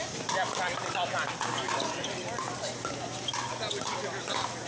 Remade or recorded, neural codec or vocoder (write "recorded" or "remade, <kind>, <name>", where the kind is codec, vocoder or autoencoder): recorded